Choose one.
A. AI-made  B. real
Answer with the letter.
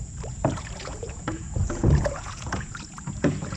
A